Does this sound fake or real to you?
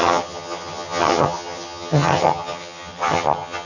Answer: fake